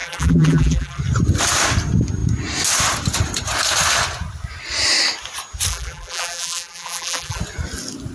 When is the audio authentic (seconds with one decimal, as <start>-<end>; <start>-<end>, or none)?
1.0-5.7; 7.4-8.1